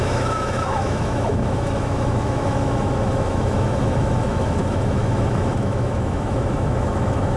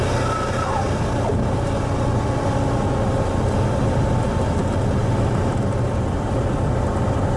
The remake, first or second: first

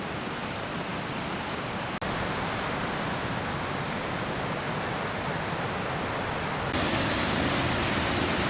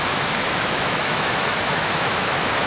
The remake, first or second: second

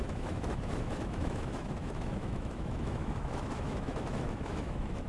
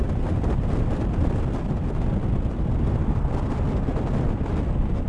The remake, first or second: first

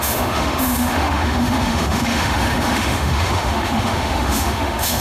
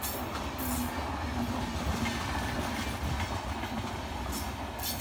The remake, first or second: first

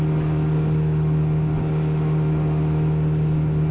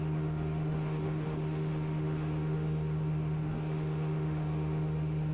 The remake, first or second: second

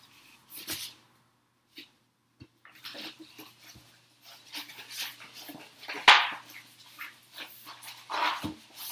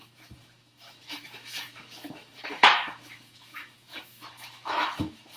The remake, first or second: second